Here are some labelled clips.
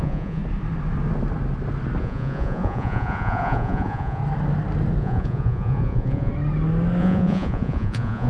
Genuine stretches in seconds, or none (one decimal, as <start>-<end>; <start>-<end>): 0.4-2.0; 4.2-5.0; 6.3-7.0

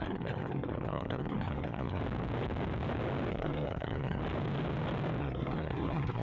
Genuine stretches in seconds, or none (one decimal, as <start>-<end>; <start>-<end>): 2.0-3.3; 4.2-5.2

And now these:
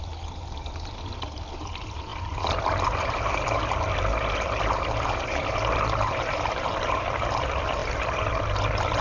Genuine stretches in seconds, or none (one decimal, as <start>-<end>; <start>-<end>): 0.0-2.1; 6.1-9.0

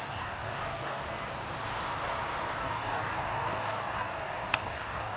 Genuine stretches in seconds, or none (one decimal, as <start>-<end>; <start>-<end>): 1.0-2.6

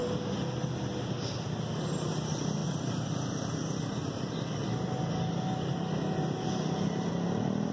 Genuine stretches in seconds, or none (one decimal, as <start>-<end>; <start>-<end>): 0.0-7.7

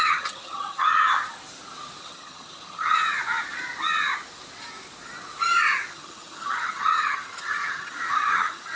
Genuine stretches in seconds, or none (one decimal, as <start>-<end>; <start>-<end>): 1.1-2.0; 3.0-5.9